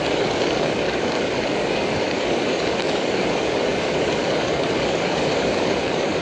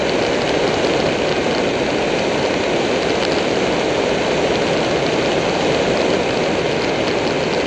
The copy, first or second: first